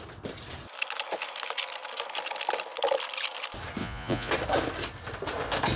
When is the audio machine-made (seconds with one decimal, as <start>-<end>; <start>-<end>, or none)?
3.8-4.3